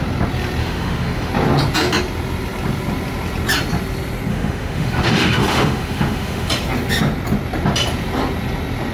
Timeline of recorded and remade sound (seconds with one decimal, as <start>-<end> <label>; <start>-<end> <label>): 0.0-0.6 recorded; 0.6-1.3 remade; 1.3-4.3 recorded; 4.3-6.5 remade; 6.5-8.9 recorded